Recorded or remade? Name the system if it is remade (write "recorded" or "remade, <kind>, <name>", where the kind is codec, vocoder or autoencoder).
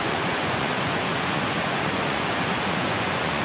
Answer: remade, vocoder, Vocos